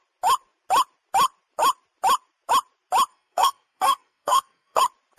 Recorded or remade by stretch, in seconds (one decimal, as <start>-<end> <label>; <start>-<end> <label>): 0.0-3.1 recorded; 3.1-4.8 remade; 4.8-5.2 recorded